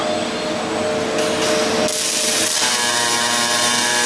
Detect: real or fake real